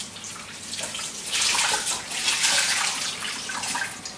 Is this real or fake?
fake